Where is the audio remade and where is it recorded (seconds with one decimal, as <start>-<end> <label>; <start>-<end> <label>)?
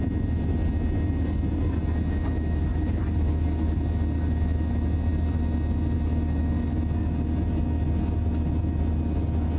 0.0-2.7 recorded; 2.7-3.3 remade; 3.3-9.6 recorded